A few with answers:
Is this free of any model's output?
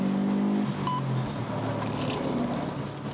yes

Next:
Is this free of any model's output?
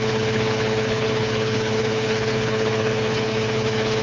no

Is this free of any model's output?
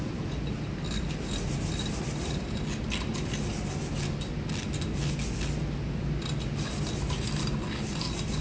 yes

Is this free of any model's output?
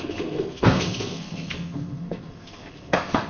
no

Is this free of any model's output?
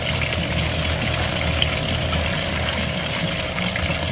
yes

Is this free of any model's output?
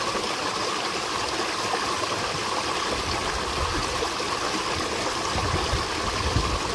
yes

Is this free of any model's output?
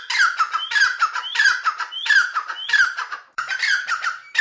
no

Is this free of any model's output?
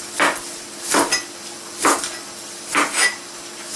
no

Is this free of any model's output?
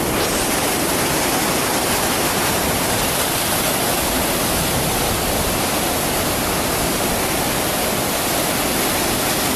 yes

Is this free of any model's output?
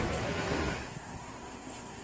no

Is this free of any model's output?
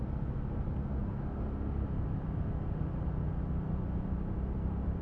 yes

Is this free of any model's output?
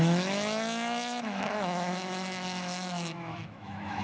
no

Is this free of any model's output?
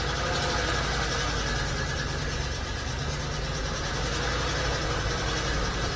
yes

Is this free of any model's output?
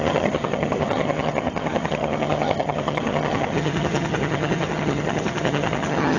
no